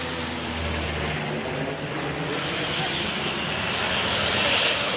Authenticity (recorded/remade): recorded